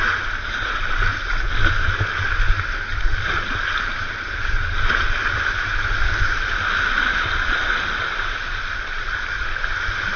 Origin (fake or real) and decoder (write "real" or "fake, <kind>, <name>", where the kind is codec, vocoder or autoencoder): real